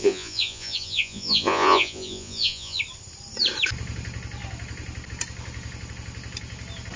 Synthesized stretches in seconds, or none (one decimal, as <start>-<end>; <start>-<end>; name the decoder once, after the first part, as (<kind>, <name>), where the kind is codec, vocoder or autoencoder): 0.0-2.8 (vocoder, Vocos)